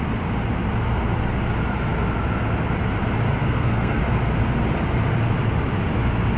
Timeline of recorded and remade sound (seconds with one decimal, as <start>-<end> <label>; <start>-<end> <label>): 0.0-3.4 recorded; 3.4-4.0 remade; 4.0-6.4 recorded